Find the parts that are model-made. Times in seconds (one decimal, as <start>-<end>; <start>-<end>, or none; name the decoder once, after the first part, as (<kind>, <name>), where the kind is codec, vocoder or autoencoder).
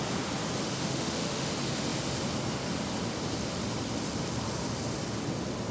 0.6-1.5 (autoencoder, DAC-VAE)